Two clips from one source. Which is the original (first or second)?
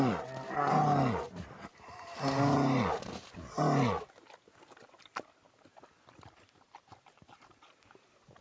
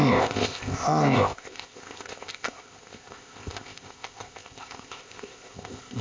first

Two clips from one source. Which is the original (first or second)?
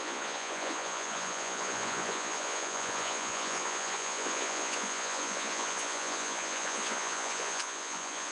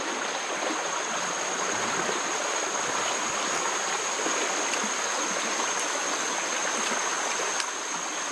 second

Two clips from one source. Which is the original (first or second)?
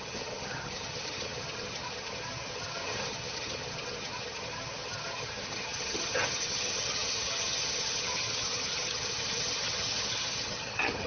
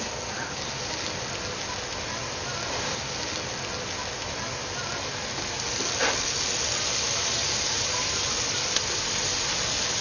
second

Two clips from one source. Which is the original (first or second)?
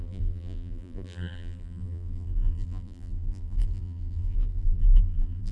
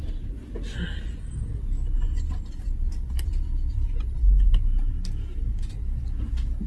second